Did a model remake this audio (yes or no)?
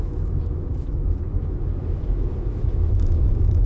yes